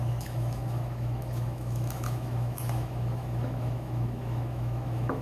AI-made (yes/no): yes